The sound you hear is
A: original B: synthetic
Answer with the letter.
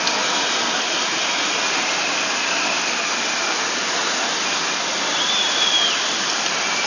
A